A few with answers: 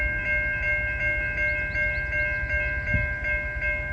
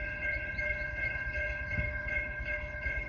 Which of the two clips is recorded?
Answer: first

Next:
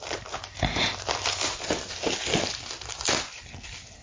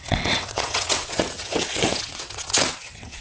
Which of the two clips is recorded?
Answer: first